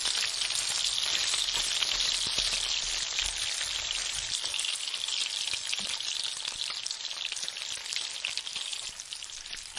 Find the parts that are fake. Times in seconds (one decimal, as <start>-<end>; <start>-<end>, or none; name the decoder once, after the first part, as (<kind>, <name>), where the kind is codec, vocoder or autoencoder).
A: none